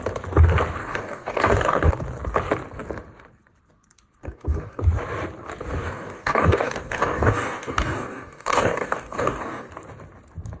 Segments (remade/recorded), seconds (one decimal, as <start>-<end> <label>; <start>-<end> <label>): 0.0-0.8 recorded; 0.8-1.9 remade; 1.9-4.2 recorded; 4.2-4.8 remade; 4.8-5.8 recorded; 5.8-9.7 remade; 9.7-10.6 recorded